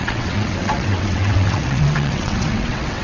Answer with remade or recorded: remade